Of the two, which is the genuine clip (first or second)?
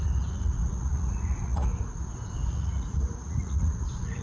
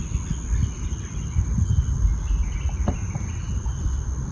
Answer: second